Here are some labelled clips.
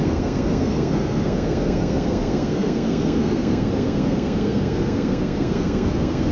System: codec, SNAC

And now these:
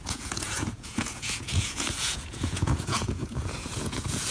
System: vocoder, Vocos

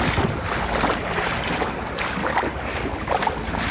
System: none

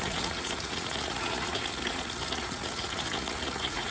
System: vocoder, Vocos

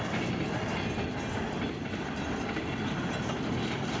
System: none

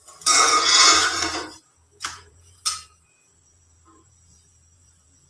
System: vocoder, Vocos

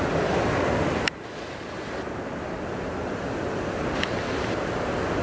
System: none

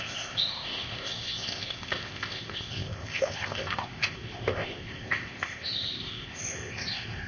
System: codec, ZipCodec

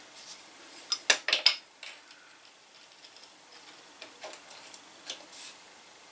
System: none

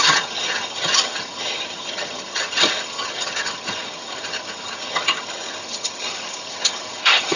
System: vocoder, HiFi-GAN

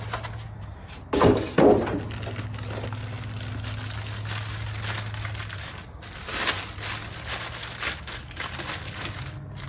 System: none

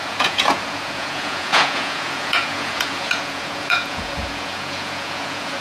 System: vocoder, Vocos